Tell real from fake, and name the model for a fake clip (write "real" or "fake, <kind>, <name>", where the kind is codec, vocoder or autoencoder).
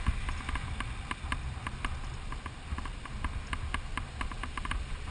real